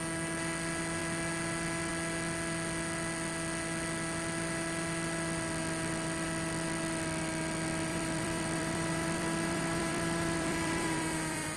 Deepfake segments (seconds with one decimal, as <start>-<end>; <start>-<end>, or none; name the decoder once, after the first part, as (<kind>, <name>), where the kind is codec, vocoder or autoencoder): 7.9-11.6 (vocoder, BigVGAN v2)